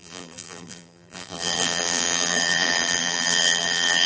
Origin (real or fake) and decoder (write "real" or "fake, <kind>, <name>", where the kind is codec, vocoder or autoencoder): fake, vocoder, BigVGAN v2